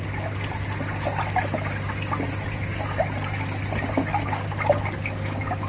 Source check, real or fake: real